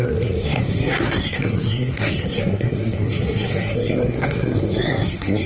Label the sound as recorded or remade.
remade